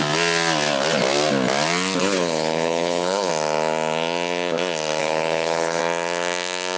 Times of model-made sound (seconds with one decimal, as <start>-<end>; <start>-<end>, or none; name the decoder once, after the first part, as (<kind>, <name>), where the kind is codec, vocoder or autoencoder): 2.0-3.3 (codec, HILCodec); 5.0-5.8